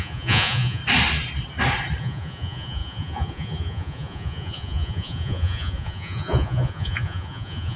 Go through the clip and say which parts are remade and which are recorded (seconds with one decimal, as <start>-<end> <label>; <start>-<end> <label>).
0.0-0.8 remade; 0.8-2.0 recorded; 2.0-7.8 remade